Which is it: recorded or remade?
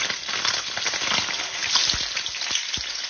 recorded